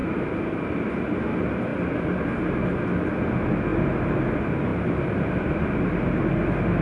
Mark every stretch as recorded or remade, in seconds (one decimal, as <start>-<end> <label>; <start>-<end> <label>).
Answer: 0.0-0.7 remade; 0.7-3.7 recorded; 3.7-4.3 remade; 4.3-4.7 recorded; 4.7-6.2 remade; 6.2-6.8 recorded